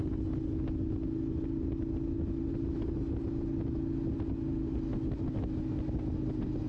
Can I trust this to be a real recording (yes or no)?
yes